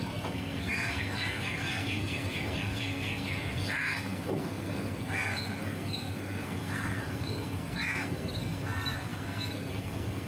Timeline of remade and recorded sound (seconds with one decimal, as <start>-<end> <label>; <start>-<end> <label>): 0.0-10.3 remade